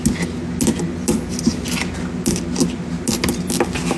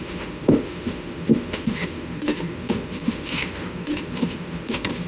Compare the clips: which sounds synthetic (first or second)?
second